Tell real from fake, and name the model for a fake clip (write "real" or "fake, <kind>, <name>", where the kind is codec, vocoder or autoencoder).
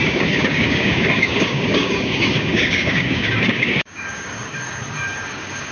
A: fake, codec, DAC